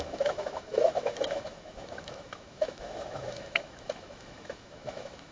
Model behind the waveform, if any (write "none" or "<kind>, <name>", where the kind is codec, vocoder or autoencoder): autoencoder, DAC-VAE